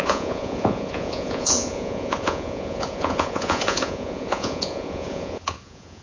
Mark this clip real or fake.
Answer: fake